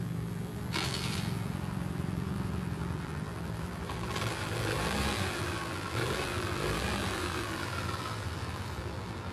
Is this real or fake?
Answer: fake